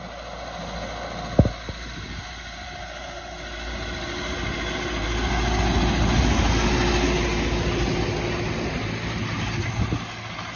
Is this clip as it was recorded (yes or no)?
yes